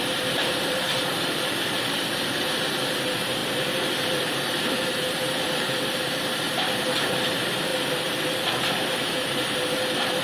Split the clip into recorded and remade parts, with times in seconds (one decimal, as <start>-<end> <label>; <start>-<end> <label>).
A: 0.0-10.2 remade